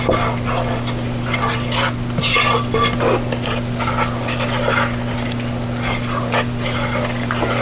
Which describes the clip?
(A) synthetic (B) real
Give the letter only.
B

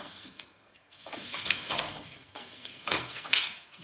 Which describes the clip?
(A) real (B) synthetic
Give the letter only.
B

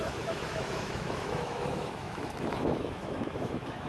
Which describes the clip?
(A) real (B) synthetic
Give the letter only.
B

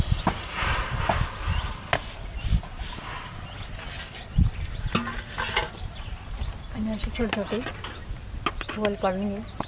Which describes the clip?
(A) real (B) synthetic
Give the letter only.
A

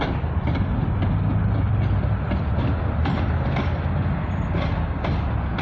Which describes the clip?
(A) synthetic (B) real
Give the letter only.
B